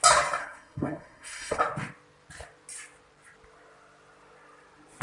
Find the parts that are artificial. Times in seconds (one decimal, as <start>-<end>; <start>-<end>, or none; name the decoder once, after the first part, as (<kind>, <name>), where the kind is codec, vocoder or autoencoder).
0.4-1.6 (codec, SNAC)